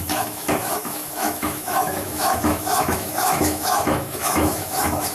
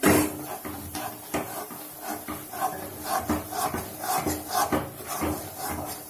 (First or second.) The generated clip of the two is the first